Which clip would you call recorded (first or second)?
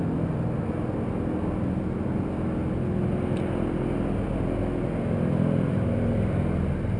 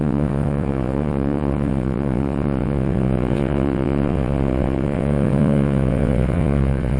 first